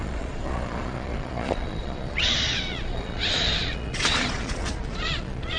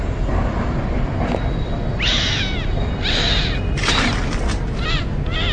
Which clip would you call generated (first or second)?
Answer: first